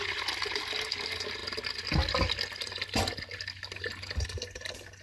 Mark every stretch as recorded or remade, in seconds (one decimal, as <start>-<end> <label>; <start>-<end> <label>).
0.0-5.0 recorded